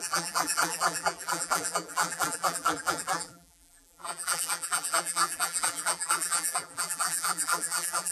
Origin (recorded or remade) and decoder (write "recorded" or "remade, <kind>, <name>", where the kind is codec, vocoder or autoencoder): remade, vocoder, BigVGAN v2